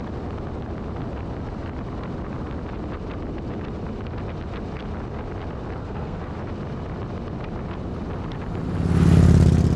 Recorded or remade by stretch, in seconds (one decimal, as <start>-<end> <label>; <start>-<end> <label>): 0.0-5.8 recorded; 5.8-6.3 remade; 6.3-9.8 recorded